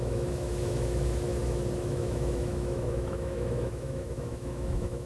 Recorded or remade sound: remade